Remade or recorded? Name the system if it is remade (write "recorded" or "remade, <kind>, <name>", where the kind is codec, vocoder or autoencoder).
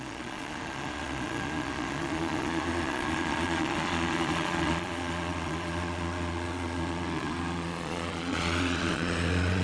remade, vocoder, Vocos